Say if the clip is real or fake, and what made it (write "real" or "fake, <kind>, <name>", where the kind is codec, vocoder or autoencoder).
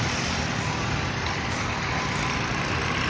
real